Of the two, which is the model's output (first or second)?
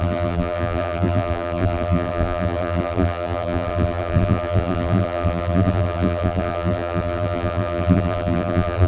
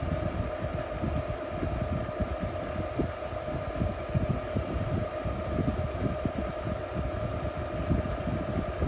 first